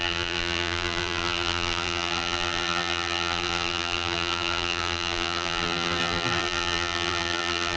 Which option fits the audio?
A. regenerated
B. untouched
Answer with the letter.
A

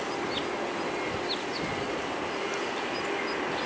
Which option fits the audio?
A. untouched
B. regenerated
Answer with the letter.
A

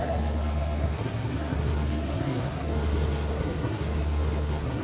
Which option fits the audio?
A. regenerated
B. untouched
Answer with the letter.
A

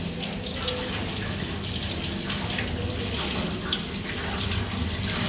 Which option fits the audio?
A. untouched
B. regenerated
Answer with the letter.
A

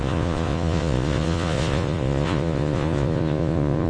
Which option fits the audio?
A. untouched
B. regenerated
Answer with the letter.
B